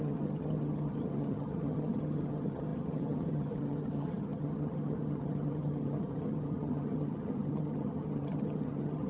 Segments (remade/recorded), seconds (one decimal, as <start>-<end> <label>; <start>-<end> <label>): 0.0-9.1 remade